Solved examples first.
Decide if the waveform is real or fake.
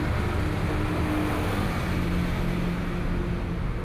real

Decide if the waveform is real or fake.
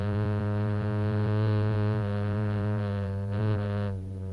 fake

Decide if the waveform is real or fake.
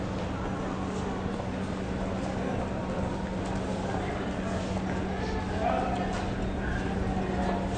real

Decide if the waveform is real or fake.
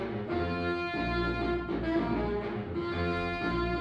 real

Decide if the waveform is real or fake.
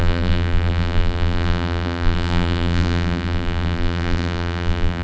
fake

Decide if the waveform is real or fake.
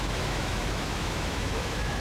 fake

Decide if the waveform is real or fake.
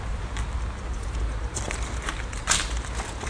real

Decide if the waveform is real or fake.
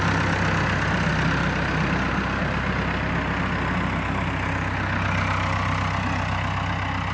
real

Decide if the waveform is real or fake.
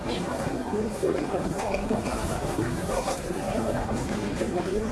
fake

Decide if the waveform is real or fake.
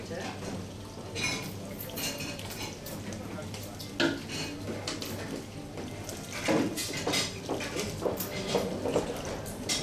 real